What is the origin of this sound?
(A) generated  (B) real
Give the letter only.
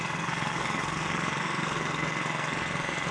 A